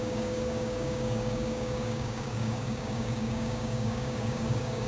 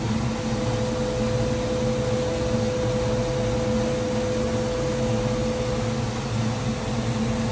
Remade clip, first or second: first